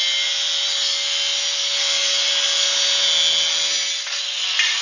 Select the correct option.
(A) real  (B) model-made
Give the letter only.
A